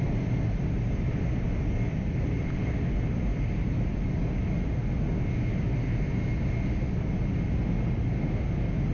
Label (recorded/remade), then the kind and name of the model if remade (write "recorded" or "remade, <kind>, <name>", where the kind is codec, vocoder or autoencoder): recorded